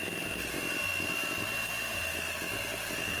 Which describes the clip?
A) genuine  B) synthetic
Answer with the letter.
A